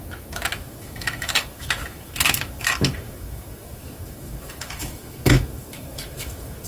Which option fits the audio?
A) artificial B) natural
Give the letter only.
A